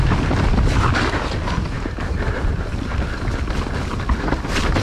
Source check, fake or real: real